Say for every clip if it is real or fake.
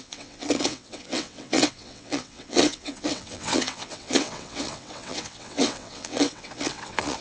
fake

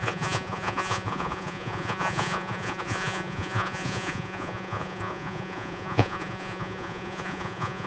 fake